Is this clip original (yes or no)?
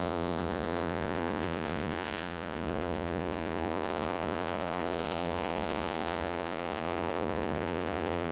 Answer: no